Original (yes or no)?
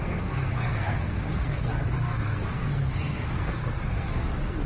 no